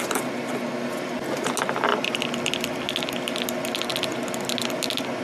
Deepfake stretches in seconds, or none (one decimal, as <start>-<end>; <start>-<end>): none